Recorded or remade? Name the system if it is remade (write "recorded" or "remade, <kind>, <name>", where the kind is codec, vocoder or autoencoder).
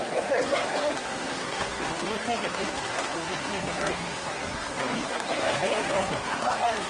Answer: remade, codec, SNAC